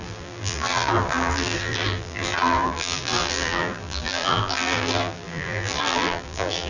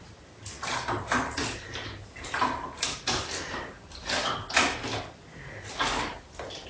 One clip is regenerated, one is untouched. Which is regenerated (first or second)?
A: first